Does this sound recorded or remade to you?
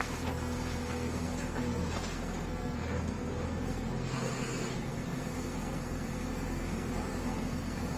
remade